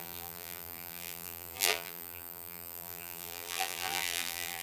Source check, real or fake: fake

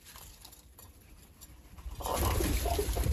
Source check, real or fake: fake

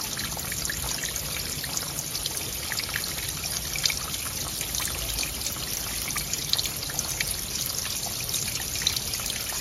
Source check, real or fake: real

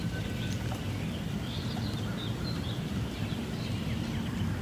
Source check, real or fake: fake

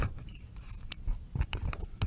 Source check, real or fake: fake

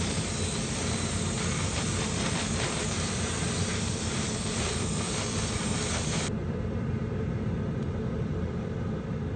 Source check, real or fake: fake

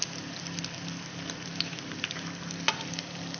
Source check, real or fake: real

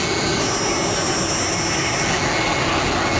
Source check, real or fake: real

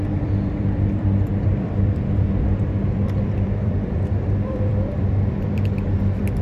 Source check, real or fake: fake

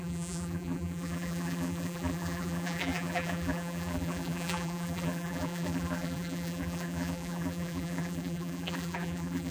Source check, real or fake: fake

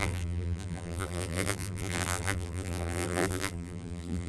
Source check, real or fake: fake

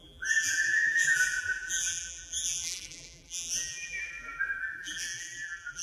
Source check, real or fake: fake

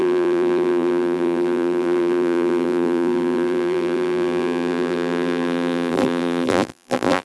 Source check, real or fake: fake